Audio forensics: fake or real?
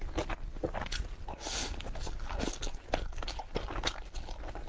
real